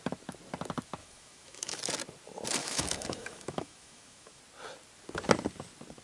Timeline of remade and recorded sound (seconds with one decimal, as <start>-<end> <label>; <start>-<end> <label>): 0.0-1.0 recorded; 1.0-1.8 remade; 1.8-2.6 recorded; 2.6-4.4 remade; 4.4-6.0 recorded

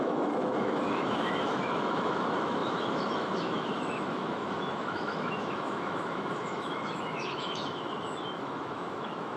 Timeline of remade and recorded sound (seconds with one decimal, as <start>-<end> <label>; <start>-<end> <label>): 0.0-9.4 remade

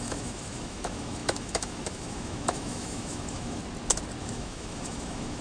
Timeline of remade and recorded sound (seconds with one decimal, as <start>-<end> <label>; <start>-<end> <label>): 0.0-3.6 remade; 3.6-4.2 recorded; 4.2-5.4 remade

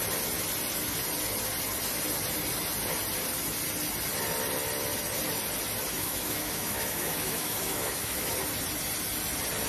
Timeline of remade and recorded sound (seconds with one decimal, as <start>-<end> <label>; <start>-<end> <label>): 0.0-6.0 recorded; 6.0-8.3 remade; 8.3-9.7 recorded

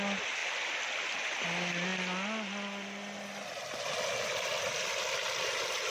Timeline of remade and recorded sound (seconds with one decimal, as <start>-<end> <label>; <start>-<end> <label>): 0.0-5.9 recorded

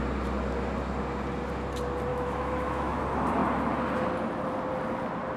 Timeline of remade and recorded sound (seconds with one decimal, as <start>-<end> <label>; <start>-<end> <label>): 0.0-2.1 recorded; 2.1-3.0 remade; 3.0-5.4 recorded

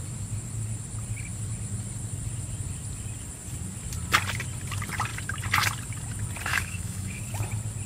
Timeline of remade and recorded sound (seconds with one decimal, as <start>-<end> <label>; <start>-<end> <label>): 0.0-6.5 recorded; 6.5-7.2 remade; 7.2-7.9 recorded

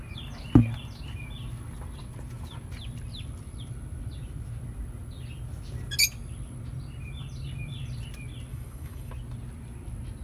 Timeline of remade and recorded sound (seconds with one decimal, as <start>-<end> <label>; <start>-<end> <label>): 0.0-8.5 recorded; 8.5-9.1 remade; 9.1-10.2 recorded